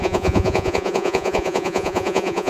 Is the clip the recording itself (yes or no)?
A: no